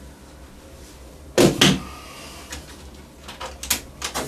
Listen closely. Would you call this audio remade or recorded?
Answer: recorded